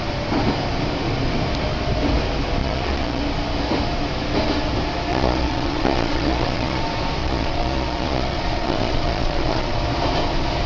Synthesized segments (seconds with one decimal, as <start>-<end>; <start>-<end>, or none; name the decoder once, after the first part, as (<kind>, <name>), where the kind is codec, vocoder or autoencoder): 2.6-3.2 (vocoder, Vocos); 5.1-6.8; 7.2-9.8